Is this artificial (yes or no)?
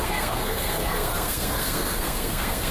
yes